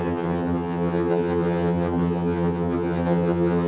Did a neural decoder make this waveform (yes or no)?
yes